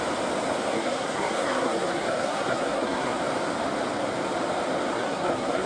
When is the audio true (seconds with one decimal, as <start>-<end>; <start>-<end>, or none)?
0.0-0.6; 3.2-4.9